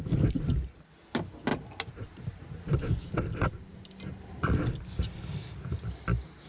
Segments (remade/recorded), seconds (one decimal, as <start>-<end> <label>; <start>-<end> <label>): 0.0-6.5 recorded